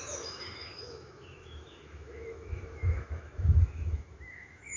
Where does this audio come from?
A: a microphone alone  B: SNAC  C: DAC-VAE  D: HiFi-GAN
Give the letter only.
C